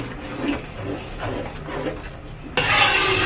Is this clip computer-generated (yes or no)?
no